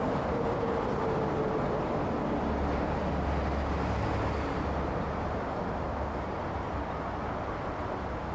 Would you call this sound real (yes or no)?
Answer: yes